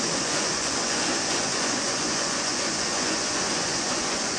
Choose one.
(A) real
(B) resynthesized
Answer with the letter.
B